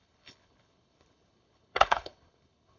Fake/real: fake